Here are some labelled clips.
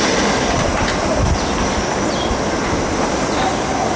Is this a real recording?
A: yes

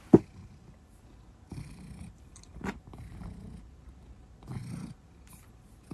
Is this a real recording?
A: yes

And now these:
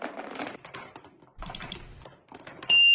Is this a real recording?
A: no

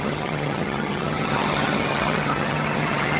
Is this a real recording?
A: no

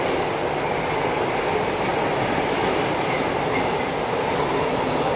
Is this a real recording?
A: yes